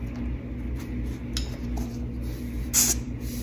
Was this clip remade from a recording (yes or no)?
no